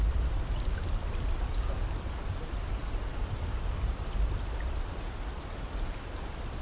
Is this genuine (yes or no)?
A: yes